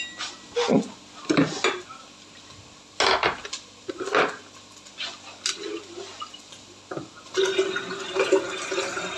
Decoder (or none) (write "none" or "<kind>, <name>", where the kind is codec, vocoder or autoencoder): none